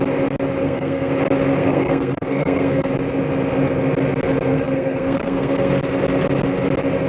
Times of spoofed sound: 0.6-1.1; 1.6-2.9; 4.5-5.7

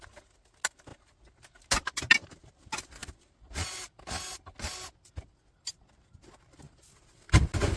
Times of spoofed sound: none